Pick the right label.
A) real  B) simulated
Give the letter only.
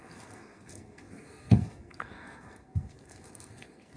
B